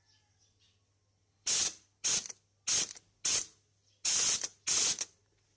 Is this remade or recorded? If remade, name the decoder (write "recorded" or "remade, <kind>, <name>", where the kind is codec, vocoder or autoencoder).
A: recorded